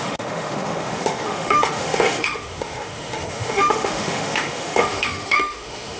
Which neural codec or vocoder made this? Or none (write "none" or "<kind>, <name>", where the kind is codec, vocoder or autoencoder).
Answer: autoencoder, DAC-VAE